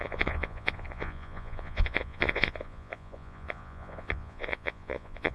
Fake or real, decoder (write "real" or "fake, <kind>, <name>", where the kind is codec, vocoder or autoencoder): fake, vocoder, Vocos